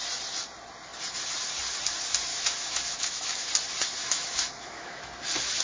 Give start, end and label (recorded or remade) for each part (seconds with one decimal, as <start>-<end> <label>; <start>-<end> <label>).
0.0-2.3 recorded; 2.3-3.5 remade; 3.5-4.0 recorded; 4.0-5.1 remade; 5.1-5.6 recorded